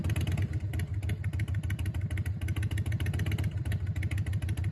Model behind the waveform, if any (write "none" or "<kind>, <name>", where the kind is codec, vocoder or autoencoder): none